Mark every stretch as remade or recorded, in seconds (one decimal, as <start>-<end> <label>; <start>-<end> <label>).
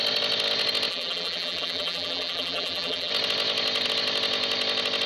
0.0-0.9 recorded; 0.9-3.1 remade; 3.1-5.1 recorded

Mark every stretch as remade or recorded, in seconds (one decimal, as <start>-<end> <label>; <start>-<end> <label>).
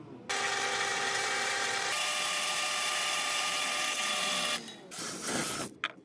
0.0-0.9 recorded; 0.9-4.3 remade; 4.3-6.0 recorded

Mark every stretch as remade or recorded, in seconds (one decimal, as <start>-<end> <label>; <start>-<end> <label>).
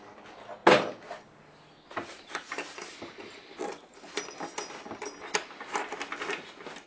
0.0-0.6 remade; 0.6-4.7 recorded; 4.7-6.9 remade